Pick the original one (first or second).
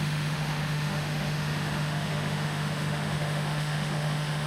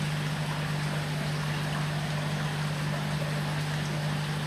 second